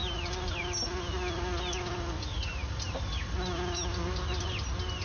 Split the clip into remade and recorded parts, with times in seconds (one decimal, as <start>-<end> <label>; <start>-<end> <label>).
0.0-5.0 recorded